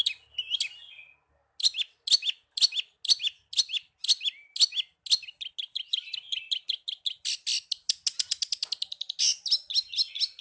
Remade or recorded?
recorded